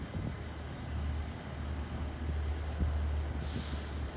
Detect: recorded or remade recorded